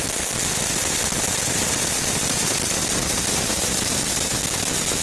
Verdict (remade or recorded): recorded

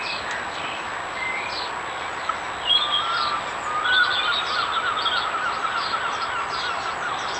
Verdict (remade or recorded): recorded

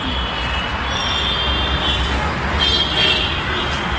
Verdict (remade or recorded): recorded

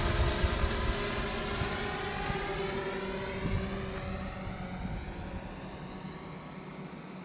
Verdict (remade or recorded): recorded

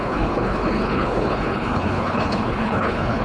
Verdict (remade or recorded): remade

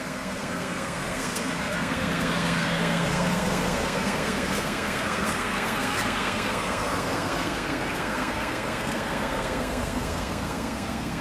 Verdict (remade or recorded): remade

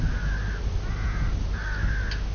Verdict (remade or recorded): recorded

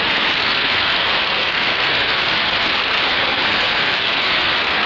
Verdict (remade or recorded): remade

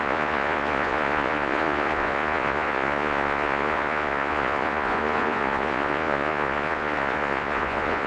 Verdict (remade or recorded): remade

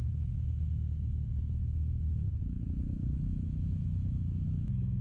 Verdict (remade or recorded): remade